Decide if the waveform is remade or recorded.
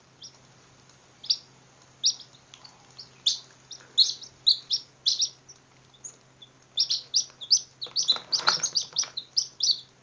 recorded